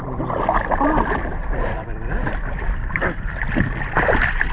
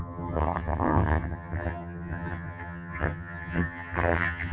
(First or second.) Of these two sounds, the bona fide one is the first